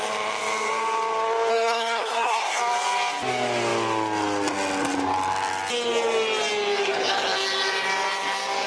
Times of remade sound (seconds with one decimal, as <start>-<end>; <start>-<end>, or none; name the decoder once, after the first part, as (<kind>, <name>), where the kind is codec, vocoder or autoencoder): 1.5-2.6 (codec, SNAC)